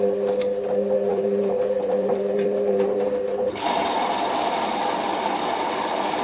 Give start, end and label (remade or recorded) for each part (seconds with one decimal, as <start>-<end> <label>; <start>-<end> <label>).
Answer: 0.0-1.1 recorded; 1.1-4.8 remade; 4.8-6.2 recorded